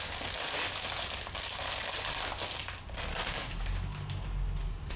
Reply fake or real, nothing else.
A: real